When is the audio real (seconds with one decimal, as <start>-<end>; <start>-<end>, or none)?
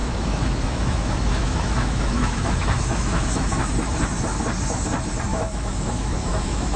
3.7-5.3